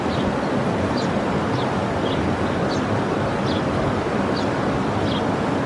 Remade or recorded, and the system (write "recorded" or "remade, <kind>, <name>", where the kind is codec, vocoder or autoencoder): recorded